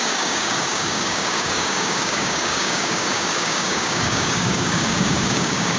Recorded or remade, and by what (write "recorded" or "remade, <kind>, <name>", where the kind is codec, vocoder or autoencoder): remade, codec, DAC